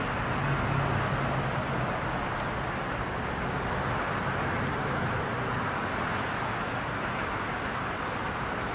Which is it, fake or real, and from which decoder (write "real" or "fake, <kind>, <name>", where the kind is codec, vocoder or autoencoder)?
real